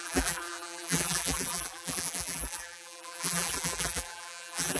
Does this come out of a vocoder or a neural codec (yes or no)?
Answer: yes